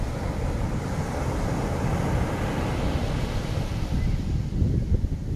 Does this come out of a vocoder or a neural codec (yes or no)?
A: no